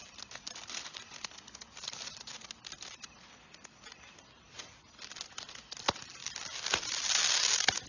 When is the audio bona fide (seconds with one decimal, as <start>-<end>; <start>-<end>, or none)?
0.0-7.9